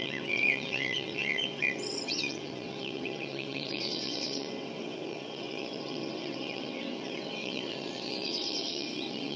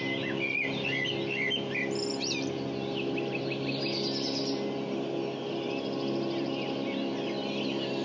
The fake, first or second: first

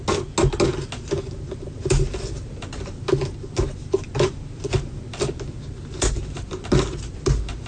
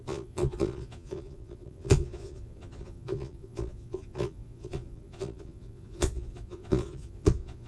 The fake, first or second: second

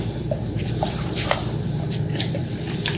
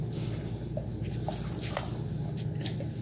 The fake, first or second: first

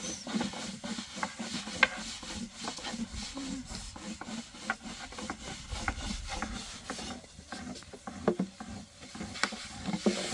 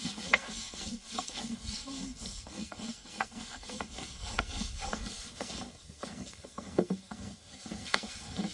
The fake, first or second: second